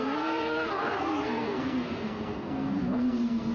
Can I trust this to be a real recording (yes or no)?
no